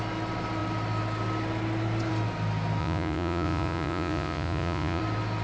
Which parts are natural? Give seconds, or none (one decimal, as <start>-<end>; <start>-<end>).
0.0-2.8; 5.0-5.4